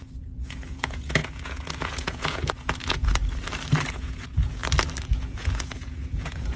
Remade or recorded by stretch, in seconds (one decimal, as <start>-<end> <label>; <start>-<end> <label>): 0.0-3.2 remade; 3.2-3.9 recorded; 3.9-4.6 remade; 4.6-5.1 recorded; 5.1-6.6 remade